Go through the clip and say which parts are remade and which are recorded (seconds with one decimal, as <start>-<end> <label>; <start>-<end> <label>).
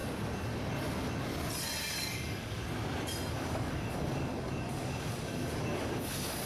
0.0-1.8 recorded; 1.8-2.6 remade; 2.6-3.3 recorded; 3.3-6.5 remade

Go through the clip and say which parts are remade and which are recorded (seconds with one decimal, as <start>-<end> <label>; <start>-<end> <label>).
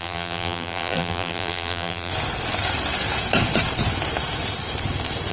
0.0-2.1 remade; 2.1-5.3 recorded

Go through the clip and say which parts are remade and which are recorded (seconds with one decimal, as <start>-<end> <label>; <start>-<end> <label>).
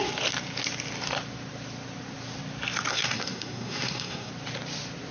0.0-2.9 recorded; 2.9-4.3 remade; 4.3-5.1 recorded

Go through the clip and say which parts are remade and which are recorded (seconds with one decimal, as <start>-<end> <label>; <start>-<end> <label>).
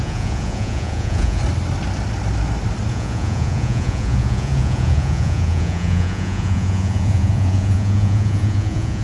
0.0-1.4 remade; 1.4-2.9 recorded; 2.9-9.0 remade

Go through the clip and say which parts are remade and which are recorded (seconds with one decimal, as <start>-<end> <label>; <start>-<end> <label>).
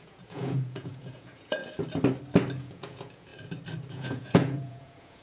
0.0-1.6 remade; 1.6-2.6 recorded; 2.6-3.3 remade; 3.3-3.9 recorded; 3.9-5.2 remade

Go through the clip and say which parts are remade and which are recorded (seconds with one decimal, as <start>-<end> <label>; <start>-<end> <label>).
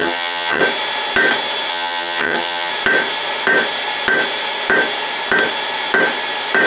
0.0-0.6 remade; 0.6-1.7 recorded; 1.7-2.7 remade; 2.7-6.7 recorded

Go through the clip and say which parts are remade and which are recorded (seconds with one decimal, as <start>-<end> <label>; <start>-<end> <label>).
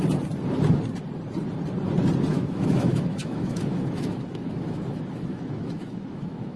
0.0-2.3 recorded; 2.3-6.6 remade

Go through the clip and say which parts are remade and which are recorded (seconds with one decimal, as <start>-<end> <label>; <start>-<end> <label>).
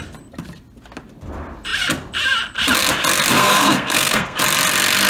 0.0-3.3 recorded; 3.3-4.4 remade; 4.4-5.1 recorded